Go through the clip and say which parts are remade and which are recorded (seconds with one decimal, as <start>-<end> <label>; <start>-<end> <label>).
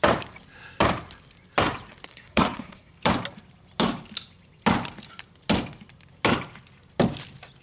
0.0-2.1 recorded; 2.1-2.9 remade; 2.9-7.6 recorded